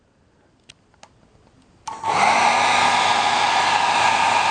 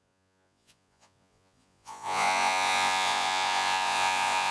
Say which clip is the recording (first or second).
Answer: first